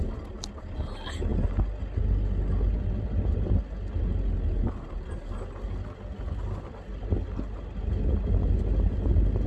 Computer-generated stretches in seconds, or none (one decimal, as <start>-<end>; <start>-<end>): none